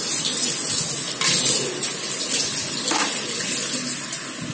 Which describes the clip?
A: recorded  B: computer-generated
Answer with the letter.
A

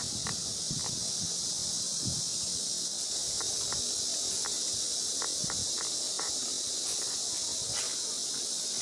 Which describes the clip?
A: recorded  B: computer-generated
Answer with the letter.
A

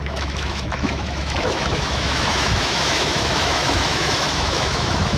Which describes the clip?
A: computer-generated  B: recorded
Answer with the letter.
A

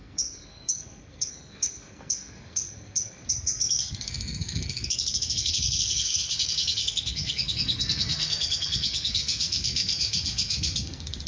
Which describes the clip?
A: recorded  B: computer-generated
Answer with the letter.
B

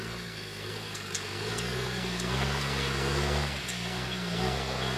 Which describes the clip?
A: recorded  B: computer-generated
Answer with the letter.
B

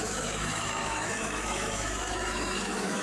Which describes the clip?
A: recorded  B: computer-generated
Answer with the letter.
B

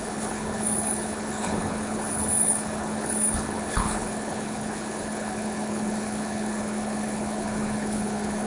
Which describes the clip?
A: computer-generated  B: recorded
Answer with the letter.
A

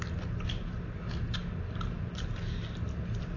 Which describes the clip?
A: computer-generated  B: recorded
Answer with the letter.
B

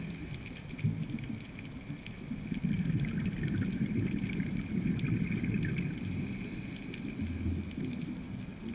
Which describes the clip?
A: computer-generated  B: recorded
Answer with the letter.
B